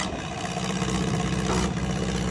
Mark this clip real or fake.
real